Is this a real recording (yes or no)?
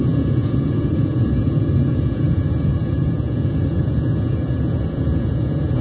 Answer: no